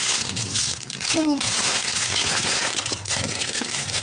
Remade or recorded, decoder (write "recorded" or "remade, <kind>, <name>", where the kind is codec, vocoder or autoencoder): remade, codec, SNAC